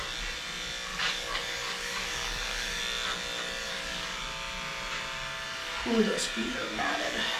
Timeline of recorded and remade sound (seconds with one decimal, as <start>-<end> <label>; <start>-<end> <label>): 0.0-0.9 recorded; 0.9-2.8 remade; 2.8-3.6 recorded; 3.6-4.2 remade; 4.2-5.6 recorded; 5.6-6.8 remade; 6.8-7.4 recorded